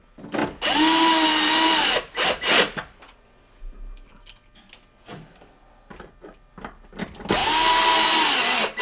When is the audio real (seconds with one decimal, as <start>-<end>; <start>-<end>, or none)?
0.0-8.8

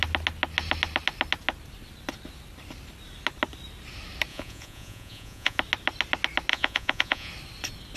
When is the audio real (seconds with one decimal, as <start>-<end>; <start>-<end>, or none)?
0.0-4.3; 5.6-6.5; 7.3-8.0

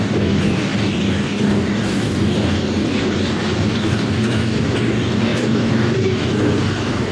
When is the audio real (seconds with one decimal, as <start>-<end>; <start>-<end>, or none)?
none

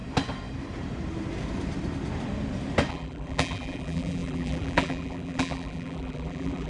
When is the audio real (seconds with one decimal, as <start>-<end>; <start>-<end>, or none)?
0.0-2.9